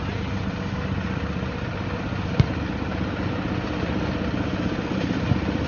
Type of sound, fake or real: real